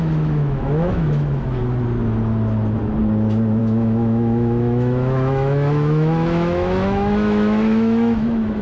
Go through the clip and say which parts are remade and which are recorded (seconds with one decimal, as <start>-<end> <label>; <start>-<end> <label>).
0.0-1.6 remade; 1.6-3.6 recorded; 3.6-8.6 remade